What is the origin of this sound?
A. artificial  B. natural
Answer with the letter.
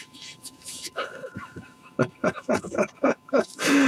A